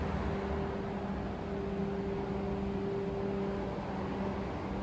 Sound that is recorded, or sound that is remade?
recorded